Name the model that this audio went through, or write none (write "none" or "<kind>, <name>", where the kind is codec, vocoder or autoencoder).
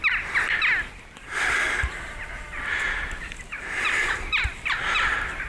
none